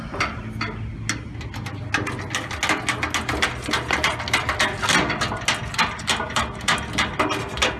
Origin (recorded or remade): recorded